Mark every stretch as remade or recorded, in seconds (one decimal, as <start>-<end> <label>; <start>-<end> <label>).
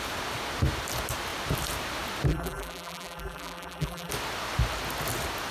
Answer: 0.0-2.3 recorded; 2.3-4.1 remade; 4.1-5.5 recorded